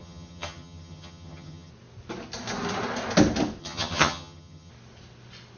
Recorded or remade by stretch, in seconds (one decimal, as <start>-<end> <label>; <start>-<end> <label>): 0.0-1.7 remade; 1.7-3.6 recorded; 3.6-4.7 remade; 4.7-5.6 recorded